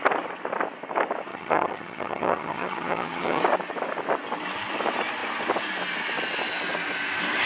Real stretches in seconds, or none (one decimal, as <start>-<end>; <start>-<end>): 0.0-1.3; 3.4-7.5

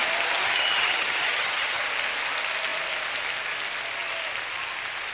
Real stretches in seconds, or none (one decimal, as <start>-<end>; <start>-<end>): 0.0-0.4; 1.8-5.1

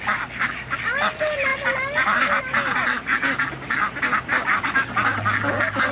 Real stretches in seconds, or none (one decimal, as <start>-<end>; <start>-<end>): 0.0-5.9

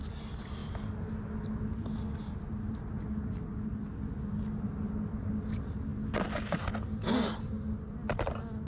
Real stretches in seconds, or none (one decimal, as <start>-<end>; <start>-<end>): 0.0-8.7

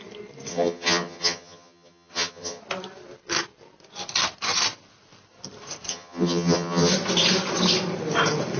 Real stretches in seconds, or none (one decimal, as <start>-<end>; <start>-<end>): 0.0-0.5; 2.6-5.9; 6.9-8.6

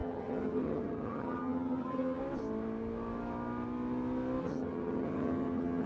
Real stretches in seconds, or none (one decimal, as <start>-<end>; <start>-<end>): 2.2-4.4